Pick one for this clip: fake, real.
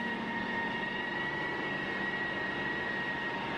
real